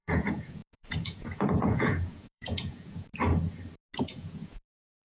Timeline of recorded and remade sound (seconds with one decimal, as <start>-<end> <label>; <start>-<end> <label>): 0.0-3.1 remade; 3.1-4.0 recorded; 4.0-5.0 remade